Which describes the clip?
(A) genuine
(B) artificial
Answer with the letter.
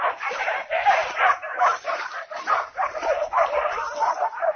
A